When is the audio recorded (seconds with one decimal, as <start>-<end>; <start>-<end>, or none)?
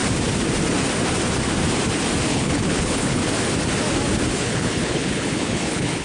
0.0-2.3; 3.2-4.3